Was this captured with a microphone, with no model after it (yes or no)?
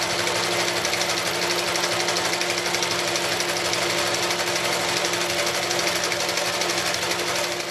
yes